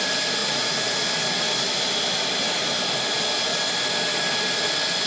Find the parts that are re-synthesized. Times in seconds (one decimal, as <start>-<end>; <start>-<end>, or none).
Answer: 0.4-1.0